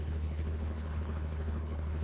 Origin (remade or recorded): remade